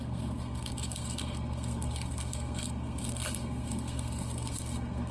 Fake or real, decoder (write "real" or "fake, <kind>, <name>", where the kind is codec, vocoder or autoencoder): fake, codec, SNAC